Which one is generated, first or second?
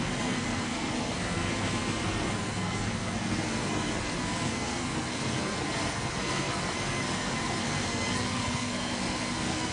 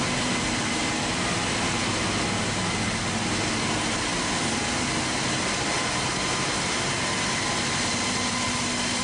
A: first